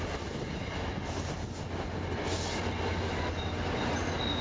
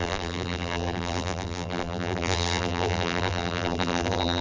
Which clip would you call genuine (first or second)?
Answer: first